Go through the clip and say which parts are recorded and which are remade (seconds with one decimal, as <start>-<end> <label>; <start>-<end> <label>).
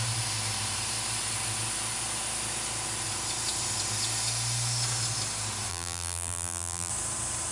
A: 0.0-5.7 recorded; 5.7-6.9 remade; 6.9-7.5 recorded